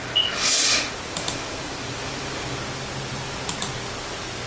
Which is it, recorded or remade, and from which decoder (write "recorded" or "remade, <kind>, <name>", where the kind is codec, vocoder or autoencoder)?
recorded